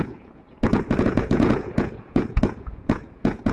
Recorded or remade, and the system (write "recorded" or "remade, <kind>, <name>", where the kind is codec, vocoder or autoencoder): remade, vocoder, Vocos